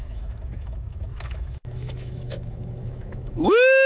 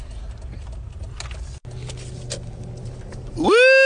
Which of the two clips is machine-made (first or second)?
first